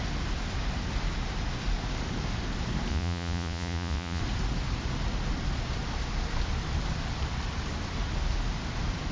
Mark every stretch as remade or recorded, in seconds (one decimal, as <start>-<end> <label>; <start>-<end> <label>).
0.0-2.9 recorded; 2.9-4.2 remade; 4.2-9.1 recorded